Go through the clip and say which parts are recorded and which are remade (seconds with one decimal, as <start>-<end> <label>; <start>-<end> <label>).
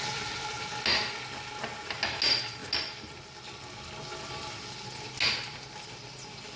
0.0-6.6 recorded